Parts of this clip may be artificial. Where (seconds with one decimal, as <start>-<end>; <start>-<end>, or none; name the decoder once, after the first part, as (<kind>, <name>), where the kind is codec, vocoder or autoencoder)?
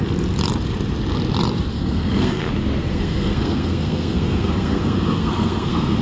1.7-2.5 (codec, SNAC); 2.9-6.0